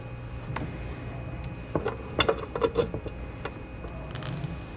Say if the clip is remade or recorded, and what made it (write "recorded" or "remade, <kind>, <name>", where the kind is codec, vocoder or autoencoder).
recorded